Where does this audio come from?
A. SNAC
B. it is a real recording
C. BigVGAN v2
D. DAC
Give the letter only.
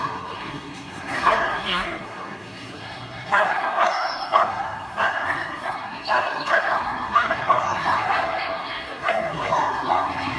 A